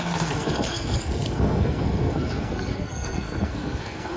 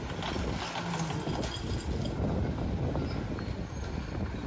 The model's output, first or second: first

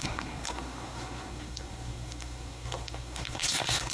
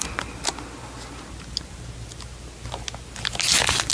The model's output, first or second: first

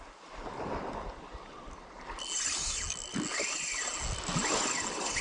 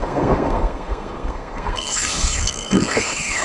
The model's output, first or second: second